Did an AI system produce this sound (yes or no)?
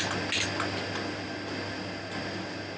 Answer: no